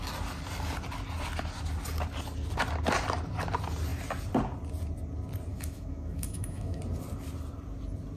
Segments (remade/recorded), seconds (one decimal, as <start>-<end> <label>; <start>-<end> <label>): 0.0-5.5 recorded; 5.5-6.8 remade; 6.8-8.2 recorded